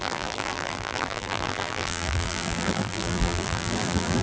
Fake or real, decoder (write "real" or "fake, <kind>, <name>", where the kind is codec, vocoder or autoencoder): fake, vocoder, BigVGAN v2